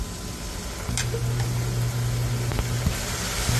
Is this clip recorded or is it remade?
recorded